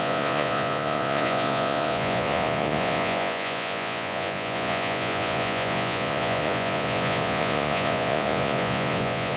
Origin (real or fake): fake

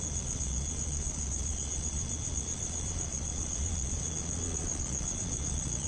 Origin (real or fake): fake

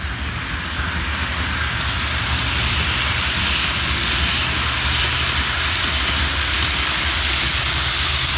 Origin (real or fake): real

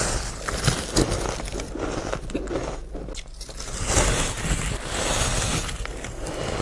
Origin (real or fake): real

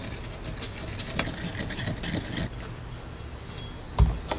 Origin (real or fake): real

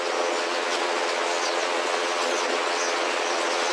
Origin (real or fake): fake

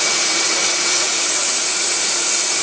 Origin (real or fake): fake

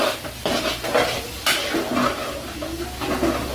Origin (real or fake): real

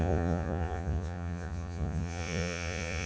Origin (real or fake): fake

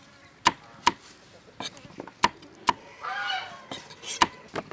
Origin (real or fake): real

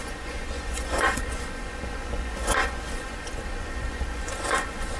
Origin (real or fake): fake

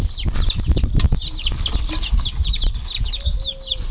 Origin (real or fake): real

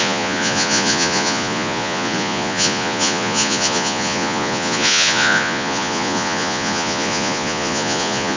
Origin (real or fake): fake